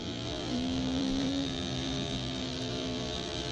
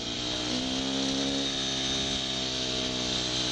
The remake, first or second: first